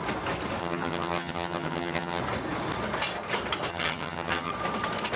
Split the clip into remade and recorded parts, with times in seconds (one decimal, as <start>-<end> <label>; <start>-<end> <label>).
0.0-0.6 recorded; 0.6-2.2 remade; 2.2-3.7 recorded; 3.7-4.5 remade; 4.5-5.2 recorded